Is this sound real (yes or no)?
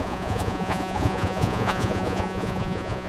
no